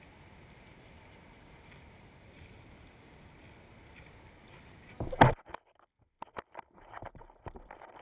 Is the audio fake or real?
real